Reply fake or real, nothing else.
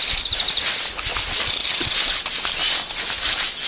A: real